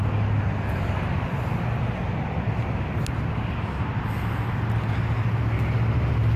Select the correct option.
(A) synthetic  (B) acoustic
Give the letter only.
B